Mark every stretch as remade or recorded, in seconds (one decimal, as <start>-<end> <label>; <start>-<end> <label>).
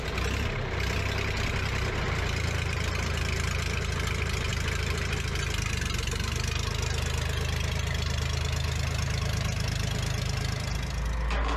0.0-11.6 recorded